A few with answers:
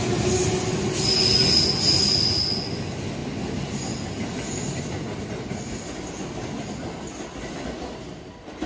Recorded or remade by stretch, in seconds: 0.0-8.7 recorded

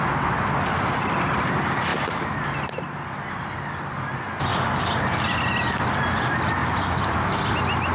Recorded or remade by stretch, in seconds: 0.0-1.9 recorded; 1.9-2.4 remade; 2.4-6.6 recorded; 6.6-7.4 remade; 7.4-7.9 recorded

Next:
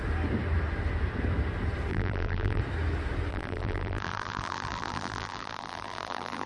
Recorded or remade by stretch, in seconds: 0.0-1.9 recorded; 1.9-2.6 remade; 2.6-3.3 recorded; 3.3-6.5 remade

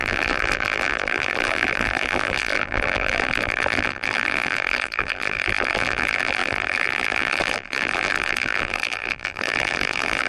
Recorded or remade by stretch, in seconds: 0.0-10.3 remade

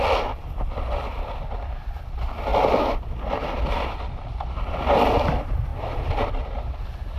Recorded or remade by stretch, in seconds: 0.0-2.5 recorded; 2.5-3.3 remade; 3.3-7.2 recorded